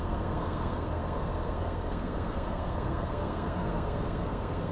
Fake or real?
fake